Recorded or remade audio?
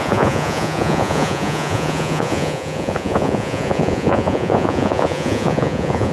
remade